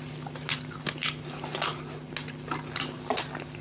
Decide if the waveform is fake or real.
real